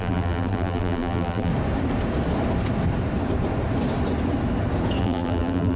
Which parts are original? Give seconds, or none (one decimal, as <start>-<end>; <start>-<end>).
1.5-5.0